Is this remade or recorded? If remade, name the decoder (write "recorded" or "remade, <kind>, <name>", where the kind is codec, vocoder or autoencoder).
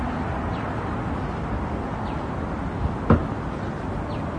recorded